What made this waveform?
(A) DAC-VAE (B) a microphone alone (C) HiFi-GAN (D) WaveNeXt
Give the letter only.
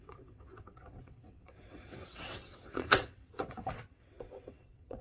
D